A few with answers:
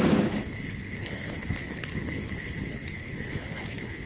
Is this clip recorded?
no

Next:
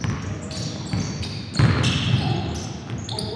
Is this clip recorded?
yes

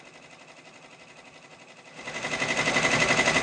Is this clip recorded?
yes